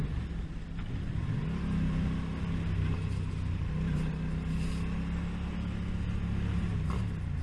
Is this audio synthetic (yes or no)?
no